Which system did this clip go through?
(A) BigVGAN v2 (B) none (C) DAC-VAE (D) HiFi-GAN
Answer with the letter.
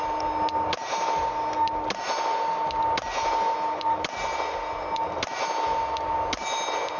B